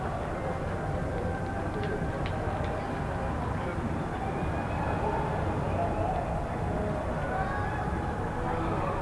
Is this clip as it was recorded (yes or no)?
yes